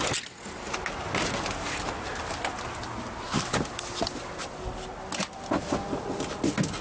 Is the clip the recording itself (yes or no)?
yes